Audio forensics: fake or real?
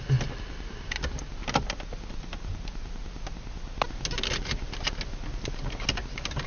real